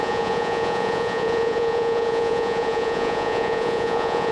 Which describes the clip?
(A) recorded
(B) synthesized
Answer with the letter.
B